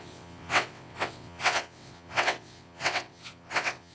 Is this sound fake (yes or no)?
yes